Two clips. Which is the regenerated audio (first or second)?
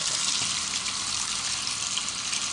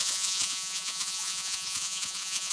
second